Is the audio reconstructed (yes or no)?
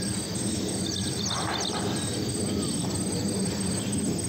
no